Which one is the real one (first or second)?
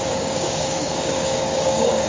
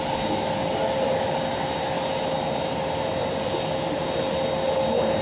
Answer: second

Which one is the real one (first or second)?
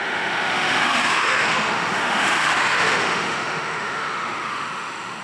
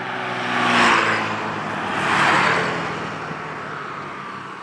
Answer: second